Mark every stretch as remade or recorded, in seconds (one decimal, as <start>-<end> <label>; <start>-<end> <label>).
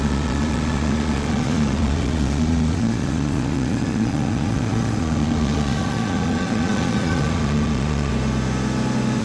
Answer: 0.0-8.1 remade; 8.1-9.2 recorded